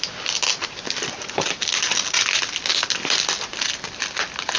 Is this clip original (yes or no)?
yes